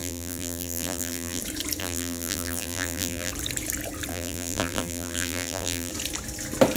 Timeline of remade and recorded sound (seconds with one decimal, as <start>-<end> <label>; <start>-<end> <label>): 0.0-1.4 remade; 1.4-1.8 recorded; 1.8-3.3 remade; 3.3-4.1 recorded; 4.1-5.9 remade; 5.9-6.8 recorded